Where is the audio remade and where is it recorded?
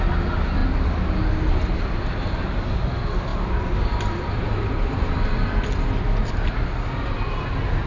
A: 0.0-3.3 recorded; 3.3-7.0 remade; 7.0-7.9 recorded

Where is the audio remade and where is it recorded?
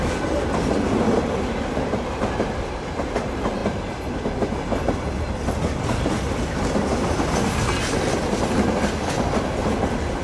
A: 0.0-10.2 recorded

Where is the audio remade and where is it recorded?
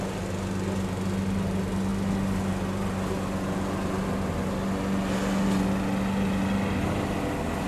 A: 0.0-7.7 recorded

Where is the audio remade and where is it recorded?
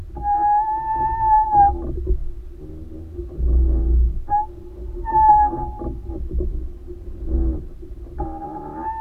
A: 0.0-9.0 recorded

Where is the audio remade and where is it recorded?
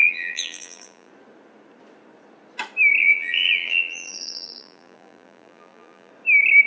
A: 0.0-1.1 remade; 1.1-3.0 recorded; 3.0-6.1 remade; 6.1-6.7 recorded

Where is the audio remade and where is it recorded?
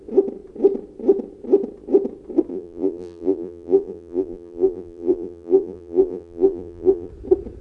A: 0.0-2.5 recorded; 2.5-7.1 remade; 7.1-7.6 recorded